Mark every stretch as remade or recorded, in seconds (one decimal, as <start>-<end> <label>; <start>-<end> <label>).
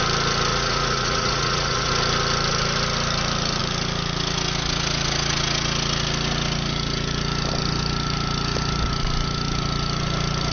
0.0-0.5 recorded; 0.5-1.9 remade; 1.9-10.5 recorded